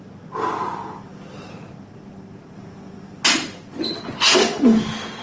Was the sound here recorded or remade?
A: recorded